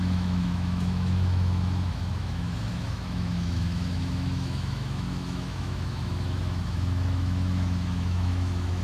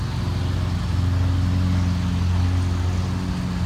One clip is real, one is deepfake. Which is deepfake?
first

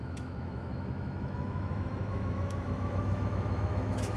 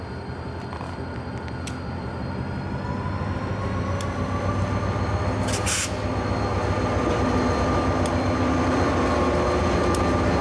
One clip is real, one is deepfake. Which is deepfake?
first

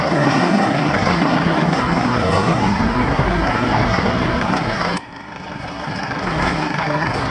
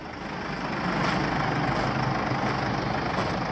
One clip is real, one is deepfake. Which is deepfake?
first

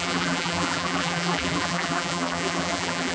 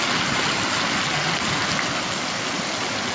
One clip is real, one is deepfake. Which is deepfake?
first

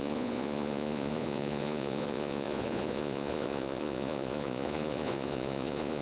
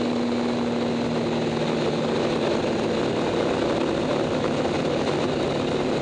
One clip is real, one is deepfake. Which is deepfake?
first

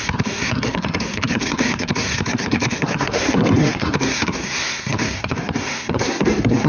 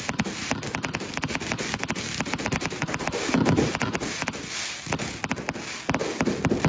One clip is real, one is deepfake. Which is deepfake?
first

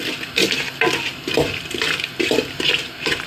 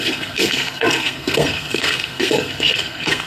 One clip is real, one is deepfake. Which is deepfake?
second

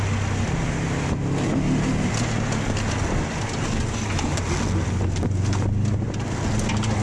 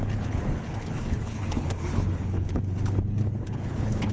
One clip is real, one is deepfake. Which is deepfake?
second